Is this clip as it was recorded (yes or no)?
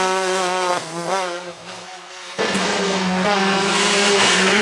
no